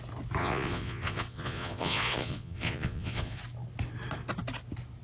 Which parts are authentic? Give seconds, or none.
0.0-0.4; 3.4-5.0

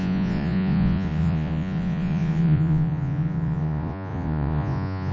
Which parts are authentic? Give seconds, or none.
none

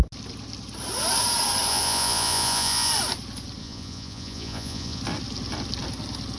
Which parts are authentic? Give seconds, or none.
0.0-1.7; 2.9-3.6; 5.0-6.4

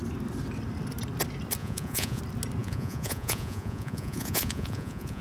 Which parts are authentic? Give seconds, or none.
0.0-1.6; 2.2-2.6